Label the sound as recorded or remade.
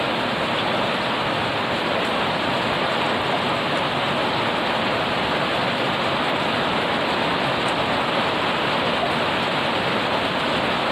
recorded